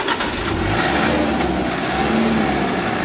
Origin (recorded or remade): recorded